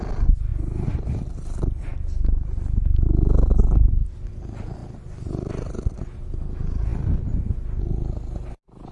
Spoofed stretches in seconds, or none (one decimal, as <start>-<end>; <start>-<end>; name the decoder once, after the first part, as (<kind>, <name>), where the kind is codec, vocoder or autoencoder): none